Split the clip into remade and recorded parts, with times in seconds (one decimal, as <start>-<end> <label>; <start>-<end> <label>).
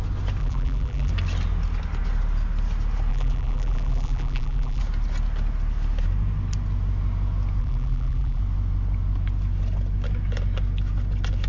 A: 0.0-0.4 recorded; 0.4-1.1 remade; 1.1-3.1 recorded; 3.1-4.8 remade; 4.8-7.6 recorded; 7.6-8.4 remade; 8.4-11.5 recorded